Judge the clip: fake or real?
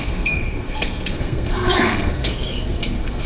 fake